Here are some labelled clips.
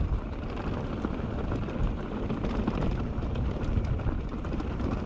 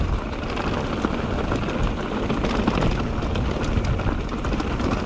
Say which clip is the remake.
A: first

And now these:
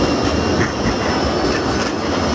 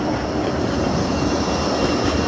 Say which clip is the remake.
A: second